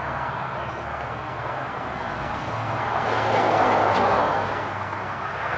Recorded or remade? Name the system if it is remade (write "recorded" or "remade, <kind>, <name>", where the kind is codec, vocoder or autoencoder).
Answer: remade, codec, SNAC